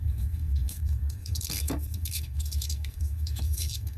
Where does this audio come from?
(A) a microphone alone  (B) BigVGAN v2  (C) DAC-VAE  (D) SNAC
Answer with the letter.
D